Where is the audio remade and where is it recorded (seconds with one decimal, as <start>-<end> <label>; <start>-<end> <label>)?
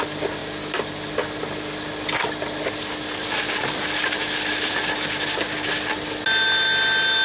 0.0-7.2 recorded